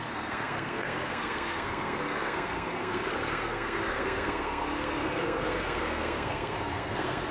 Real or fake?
fake